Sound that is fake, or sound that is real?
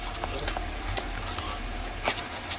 real